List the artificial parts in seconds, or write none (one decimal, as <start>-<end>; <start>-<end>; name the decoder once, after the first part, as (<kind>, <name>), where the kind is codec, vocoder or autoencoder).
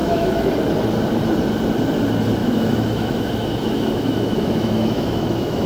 0.0-0.5 (autoencoder, DAC-VAE); 2.4-5.7